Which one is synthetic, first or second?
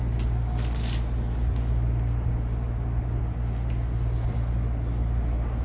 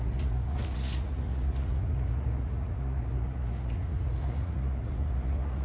second